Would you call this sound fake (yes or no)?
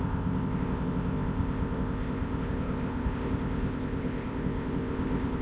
yes